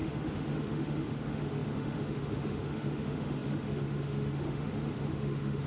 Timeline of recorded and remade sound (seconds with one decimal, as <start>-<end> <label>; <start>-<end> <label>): 0.0-5.7 remade